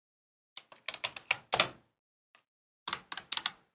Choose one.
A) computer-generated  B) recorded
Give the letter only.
B